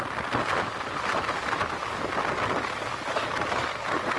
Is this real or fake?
real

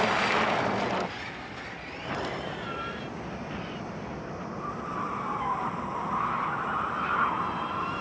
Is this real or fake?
real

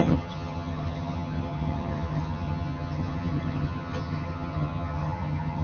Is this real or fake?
fake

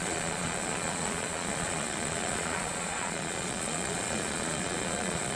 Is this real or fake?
fake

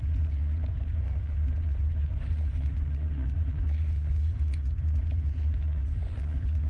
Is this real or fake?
fake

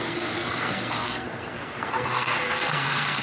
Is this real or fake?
fake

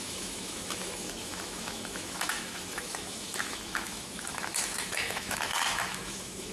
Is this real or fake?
fake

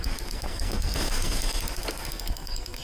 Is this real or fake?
fake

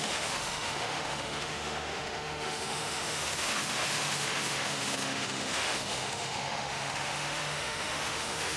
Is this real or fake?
fake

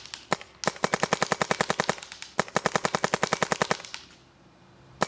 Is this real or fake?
real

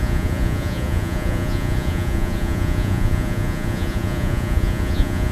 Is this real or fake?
fake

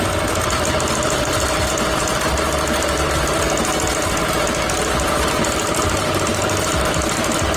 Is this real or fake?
real